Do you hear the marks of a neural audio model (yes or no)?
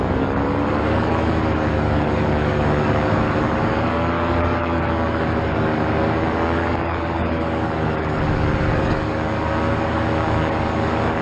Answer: yes